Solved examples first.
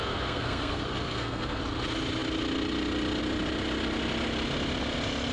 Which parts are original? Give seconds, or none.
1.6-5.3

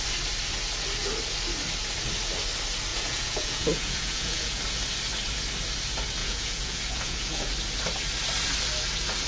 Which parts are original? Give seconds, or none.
0.0-2.9; 4.6-6.2; 7.5-9.3